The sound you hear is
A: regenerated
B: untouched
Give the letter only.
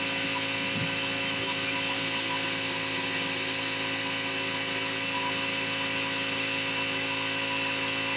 B